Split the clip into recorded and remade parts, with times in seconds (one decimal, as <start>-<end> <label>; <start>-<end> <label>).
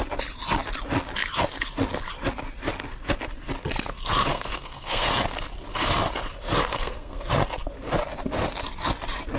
0.0-4.3 recorded; 4.3-5.1 remade; 5.1-6.7 recorded; 6.7-7.3 remade; 7.3-9.4 recorded